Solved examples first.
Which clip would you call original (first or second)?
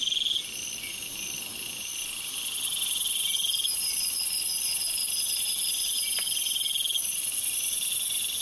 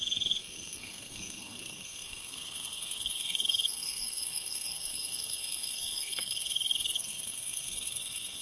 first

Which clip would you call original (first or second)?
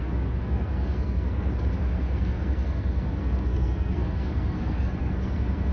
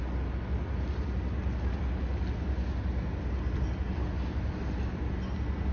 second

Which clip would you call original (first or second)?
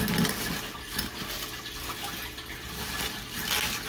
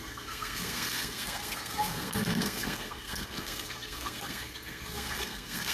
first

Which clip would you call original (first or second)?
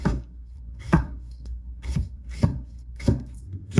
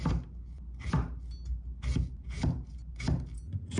second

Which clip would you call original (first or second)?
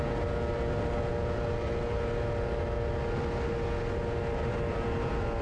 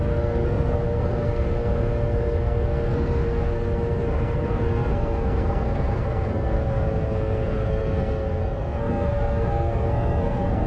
first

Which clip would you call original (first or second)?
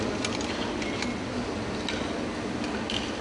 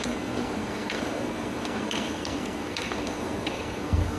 first